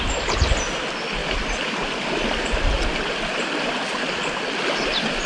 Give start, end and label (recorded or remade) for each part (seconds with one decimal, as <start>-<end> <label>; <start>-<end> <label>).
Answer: 0.0-5.3 recorded